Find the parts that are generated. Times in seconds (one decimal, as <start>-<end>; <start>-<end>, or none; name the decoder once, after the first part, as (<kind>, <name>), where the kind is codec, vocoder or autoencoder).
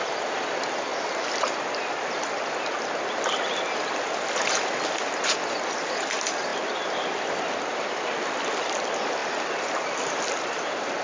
none